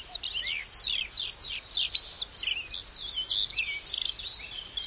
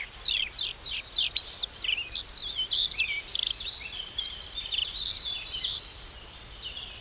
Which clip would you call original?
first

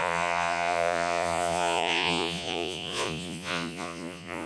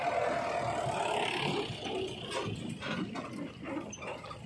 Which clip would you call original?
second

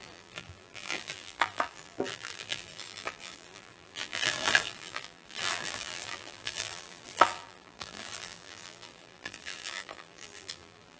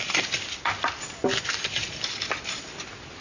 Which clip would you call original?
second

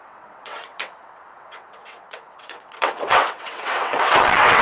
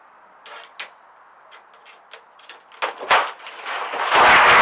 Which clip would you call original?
second